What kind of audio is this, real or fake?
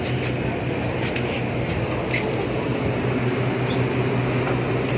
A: real